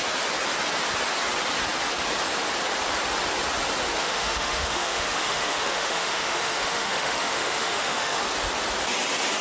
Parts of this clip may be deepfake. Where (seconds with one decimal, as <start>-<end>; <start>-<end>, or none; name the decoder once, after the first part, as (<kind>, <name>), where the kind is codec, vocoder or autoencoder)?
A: 4.0-8.2 (autoencoder, DAC-VAE)